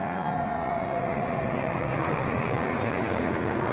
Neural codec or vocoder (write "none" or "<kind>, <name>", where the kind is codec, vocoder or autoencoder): vocoder, Vocos